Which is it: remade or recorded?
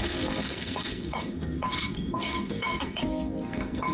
remade